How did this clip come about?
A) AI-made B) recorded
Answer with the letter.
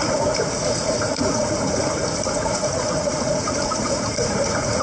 A